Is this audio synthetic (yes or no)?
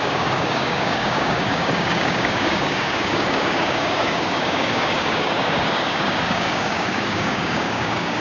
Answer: yes